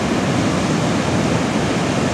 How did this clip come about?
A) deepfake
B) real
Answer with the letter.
B